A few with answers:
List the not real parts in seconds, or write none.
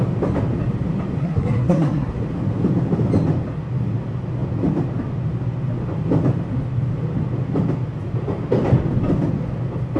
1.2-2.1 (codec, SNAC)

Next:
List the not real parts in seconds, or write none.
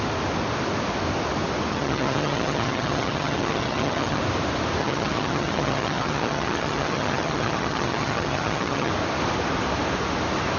1.7-4.2 (vocoder, HiFi-GAN); 4.8-8.9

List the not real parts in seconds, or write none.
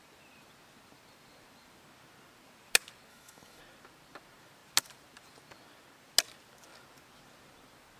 3.1-3.6 (autoencoder, DAC-VAE)